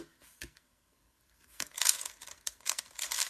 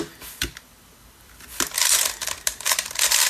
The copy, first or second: first